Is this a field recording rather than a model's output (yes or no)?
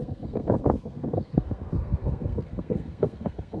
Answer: no